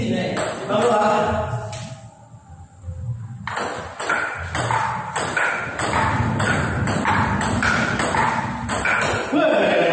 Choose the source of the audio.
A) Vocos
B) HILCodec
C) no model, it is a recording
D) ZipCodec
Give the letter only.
C